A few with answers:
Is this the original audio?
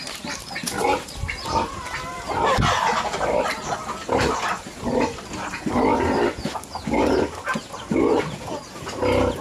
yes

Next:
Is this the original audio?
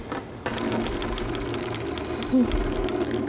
yes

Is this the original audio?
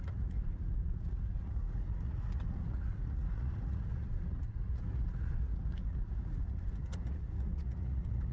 no